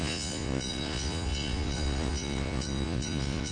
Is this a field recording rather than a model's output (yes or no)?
no